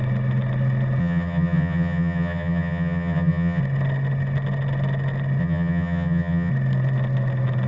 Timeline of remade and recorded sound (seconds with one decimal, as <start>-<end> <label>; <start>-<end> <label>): 0.0-1.0 recorded; 1.0-3.6 remade; 3.6-5.4 recorded; 5.4-6.5 remade; 6.5-7.7 recorded